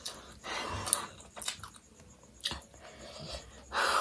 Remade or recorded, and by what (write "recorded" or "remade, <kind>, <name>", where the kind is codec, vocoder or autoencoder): recorded